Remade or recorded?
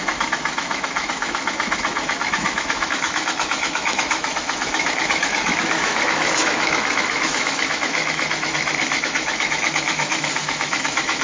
remade